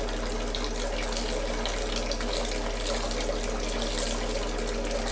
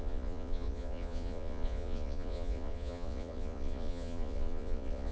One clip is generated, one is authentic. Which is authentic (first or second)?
first